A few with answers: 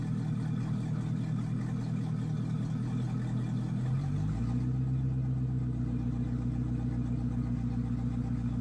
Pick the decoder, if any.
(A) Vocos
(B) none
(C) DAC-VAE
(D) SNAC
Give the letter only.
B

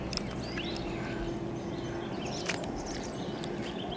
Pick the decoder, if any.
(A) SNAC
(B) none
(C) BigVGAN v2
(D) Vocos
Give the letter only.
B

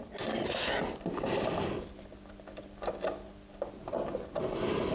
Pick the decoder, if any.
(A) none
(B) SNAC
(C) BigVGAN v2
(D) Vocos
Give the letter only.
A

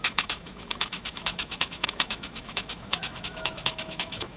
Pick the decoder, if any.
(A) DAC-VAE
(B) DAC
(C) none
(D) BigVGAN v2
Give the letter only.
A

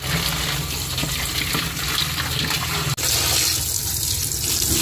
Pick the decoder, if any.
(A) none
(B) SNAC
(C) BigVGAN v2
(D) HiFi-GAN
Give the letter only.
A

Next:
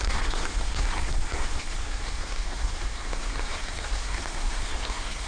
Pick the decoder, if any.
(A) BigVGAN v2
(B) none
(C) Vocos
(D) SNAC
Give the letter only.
D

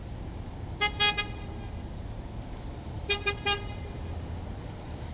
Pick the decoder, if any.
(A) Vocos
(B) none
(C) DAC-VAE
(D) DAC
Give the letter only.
B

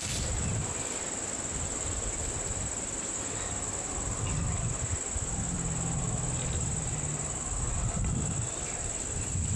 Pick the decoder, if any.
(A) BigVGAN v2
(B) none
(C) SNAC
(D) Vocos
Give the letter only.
B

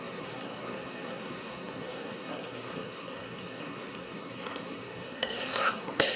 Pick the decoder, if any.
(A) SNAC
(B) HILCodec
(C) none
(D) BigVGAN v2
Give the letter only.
A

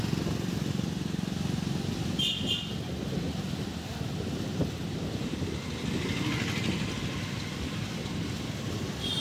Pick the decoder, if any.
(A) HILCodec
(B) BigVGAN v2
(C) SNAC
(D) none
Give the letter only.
D